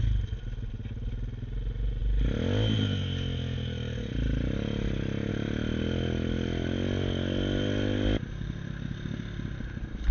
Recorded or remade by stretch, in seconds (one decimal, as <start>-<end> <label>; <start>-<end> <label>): 0.0-10.1 recorded